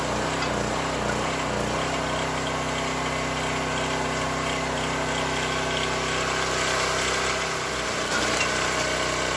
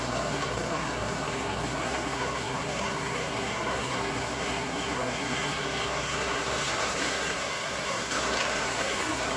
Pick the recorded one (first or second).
first